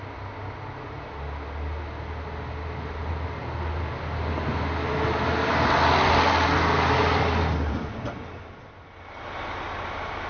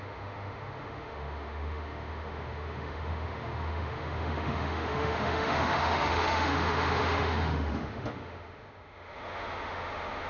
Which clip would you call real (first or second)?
first